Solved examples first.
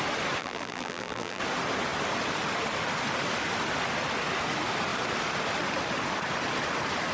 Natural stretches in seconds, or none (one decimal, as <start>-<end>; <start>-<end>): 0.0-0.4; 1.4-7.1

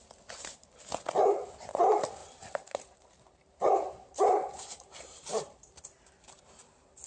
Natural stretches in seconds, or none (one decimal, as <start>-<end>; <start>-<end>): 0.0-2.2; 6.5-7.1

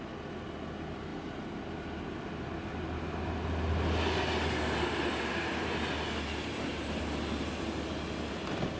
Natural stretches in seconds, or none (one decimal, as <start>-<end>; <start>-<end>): 0.0-8.8